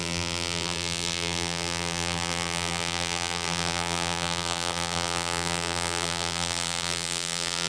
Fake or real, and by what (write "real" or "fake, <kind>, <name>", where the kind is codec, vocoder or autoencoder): fake, vocoder, BigVGAN v2